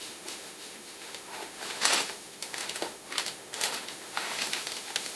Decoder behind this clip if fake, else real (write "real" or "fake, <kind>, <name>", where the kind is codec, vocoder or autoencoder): fake, autoencoder, DAC-VAE